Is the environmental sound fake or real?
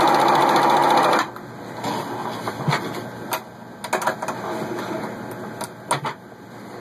real